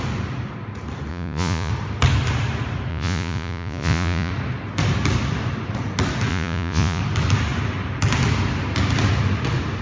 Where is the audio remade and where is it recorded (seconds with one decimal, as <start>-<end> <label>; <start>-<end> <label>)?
0.0-1.1 recorded; 1.1-1.7 remade; 1.7-2.9 recorded; 2.9-4.3 remade; 4.3-6.3 recorded; 6.3-7.0 remade; 7.0-9.8 recorded